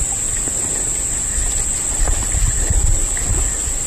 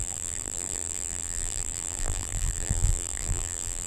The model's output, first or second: second